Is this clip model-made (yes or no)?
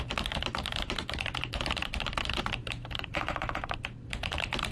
yes